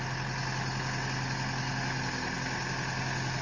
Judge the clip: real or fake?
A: real